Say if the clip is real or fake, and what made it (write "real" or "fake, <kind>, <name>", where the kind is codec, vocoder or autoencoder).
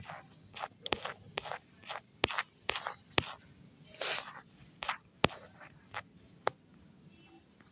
real